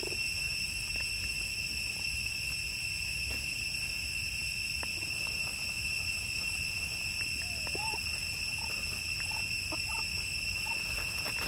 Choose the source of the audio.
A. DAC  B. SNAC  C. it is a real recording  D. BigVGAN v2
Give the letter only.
C